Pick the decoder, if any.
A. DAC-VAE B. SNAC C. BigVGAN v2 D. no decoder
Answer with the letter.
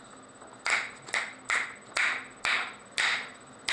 D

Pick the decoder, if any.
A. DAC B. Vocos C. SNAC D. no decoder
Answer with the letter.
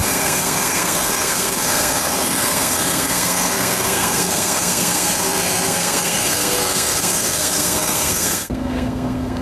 C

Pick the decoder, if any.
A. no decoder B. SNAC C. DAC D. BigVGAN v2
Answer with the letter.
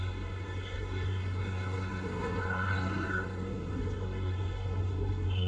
B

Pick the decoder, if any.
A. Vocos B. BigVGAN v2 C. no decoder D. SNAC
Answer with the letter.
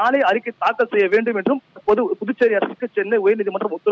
C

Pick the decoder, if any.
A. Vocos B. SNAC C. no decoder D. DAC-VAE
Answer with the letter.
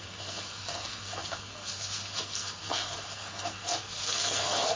B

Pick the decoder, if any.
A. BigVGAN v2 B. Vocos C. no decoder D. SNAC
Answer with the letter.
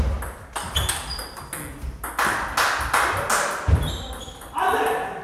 C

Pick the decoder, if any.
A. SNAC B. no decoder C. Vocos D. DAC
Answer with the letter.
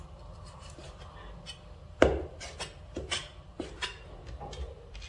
B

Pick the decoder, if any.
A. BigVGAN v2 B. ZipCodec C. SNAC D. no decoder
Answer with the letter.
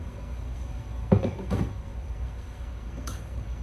C